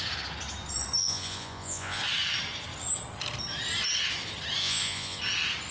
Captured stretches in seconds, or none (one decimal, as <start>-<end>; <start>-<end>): 0.0-1.0; 2.0-4.6; 5.2-5.7